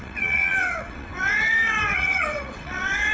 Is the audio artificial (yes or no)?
yes